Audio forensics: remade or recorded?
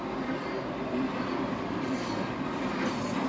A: recorded